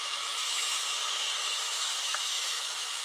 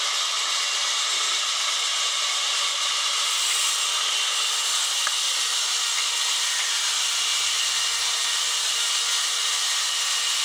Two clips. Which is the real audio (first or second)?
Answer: second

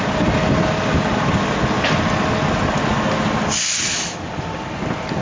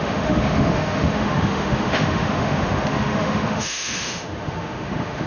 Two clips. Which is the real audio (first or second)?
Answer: first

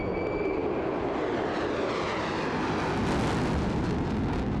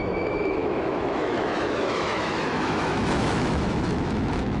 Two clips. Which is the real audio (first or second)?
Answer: first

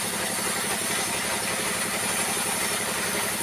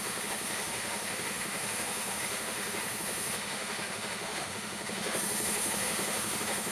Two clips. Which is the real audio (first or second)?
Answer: first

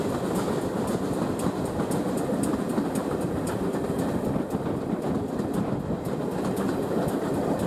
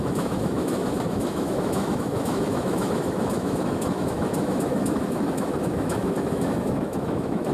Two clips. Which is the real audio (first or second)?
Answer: first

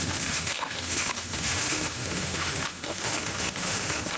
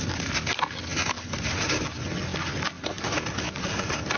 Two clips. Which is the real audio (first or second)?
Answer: second